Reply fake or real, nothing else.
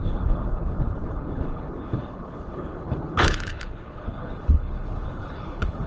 fake